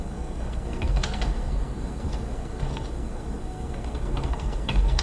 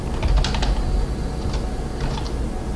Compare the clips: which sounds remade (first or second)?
first